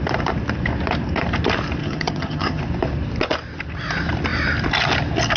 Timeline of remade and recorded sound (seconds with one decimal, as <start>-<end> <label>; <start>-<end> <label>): 0.0-1.8 recorded; 1.8-2.6 remade; 2.6-5.4 recorded